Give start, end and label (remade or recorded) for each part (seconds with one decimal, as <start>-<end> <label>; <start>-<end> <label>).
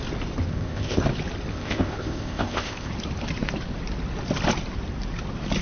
0.0-0.5 recorded; 0.5-1.0 remade; 1.0-1.5 recorded; 1.5-2.9 remade; 2.9-5.6 recorded